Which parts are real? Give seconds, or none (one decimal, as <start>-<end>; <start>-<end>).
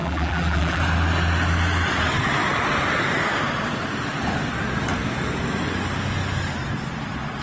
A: 0.8-7.4